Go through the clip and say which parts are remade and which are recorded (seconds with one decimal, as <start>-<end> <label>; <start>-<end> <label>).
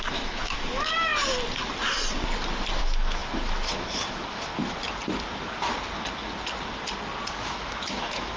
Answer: 0.0-1.1 remade; 1.1-2.8 recorded; 2.8-4.5 remade; 4.5-7.3 recorded; 7.3-8.4 remade